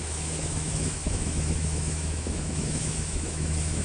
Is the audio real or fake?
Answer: fake